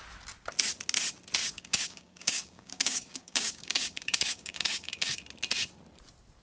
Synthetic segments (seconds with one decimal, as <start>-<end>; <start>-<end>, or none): 1.4-5.2